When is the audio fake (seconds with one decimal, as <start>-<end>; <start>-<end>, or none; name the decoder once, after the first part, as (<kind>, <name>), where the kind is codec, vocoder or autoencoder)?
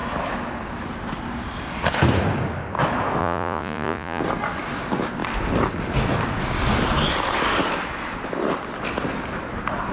3.2-4.2 (vocoder, Vocos)